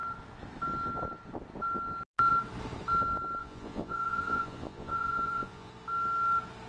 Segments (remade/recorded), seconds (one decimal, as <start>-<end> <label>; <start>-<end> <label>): 0.0-3.4 recorded; 3.4-5.7 remade; 5.7-6.7 recorded

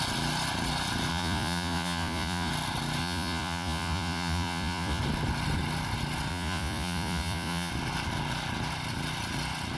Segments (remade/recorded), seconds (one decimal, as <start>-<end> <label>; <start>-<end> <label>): 0.0-1.1 recorded; 1.1-2.5 remade; 2.5-3.0 recorded; 3.0-5.0 remade; 5.0-6.3 recorded; 6.3-7.7 remade; 7.7-9.8 recorded

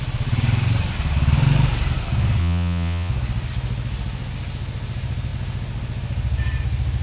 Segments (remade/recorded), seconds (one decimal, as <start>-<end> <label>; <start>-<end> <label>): 0.0-2.4 recorded; 2.4-3.1 remade; 3.1-7.0 recorded

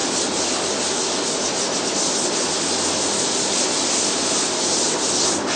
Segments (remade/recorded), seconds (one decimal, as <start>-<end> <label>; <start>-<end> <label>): 0.0-5.6 recorded

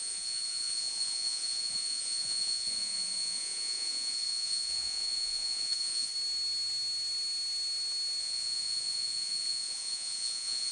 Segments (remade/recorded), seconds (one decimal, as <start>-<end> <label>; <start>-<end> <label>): 0.0-6.1 remade; 6.1-8.2 recorded; 8.2-10.7 remade

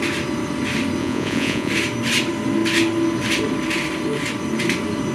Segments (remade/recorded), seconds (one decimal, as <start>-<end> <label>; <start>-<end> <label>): 0.0-1.0 recorded; 1.0-1.7 remade; 1.7-5.1 recorded